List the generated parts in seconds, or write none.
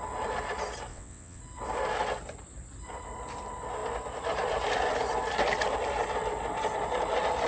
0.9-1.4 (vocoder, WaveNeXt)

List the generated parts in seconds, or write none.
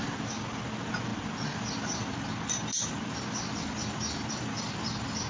none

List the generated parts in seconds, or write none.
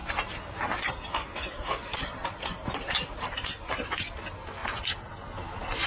0.0-3.5 (vocoder, BigVGAN v2)